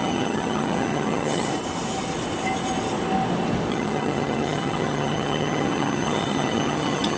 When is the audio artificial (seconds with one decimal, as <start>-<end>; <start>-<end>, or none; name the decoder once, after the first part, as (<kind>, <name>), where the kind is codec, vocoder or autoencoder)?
0.0-1.5 (vocoder, HiFi-GAN); 3.7-7.2